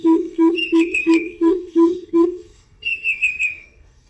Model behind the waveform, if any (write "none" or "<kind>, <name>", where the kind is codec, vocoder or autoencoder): codec, SNAC